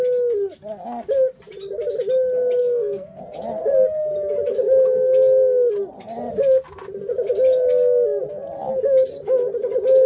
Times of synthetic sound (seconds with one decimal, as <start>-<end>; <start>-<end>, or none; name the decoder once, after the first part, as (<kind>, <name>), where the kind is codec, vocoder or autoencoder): 2.6-3.2 (codec, SNAC)